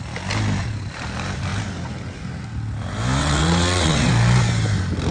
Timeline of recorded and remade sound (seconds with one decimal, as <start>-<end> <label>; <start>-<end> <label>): 0.0-3.2 recorded; 3.2-4.1 remade; 4.1-5.1 recorded